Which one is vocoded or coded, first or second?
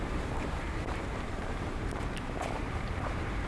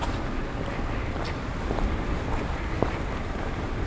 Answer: first